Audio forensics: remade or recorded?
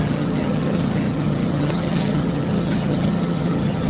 remade